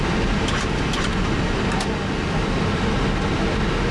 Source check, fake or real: real